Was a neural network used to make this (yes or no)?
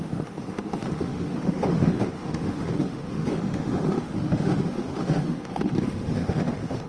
yes